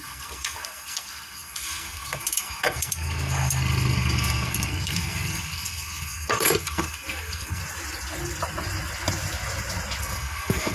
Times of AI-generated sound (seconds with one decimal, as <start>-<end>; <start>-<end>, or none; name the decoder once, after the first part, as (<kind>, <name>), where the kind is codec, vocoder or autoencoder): 0.0-7.6 (codec, SNAC); 10.0-10.7